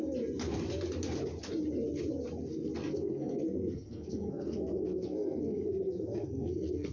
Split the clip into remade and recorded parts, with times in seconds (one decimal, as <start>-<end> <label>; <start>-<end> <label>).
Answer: 0.0-2.8 recorded; 2.8-6.9 remade

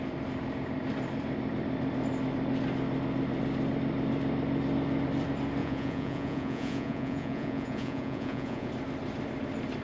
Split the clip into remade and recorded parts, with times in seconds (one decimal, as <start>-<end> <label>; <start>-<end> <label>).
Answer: 0.0-5.6 recorded; 5.6-8.7 remade; 8.7-9.8 recorded